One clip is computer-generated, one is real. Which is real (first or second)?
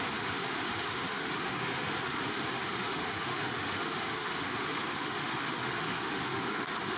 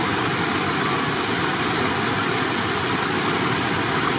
second